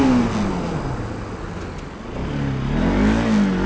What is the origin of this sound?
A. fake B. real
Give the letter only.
B